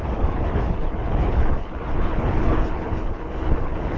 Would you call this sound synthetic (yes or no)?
yes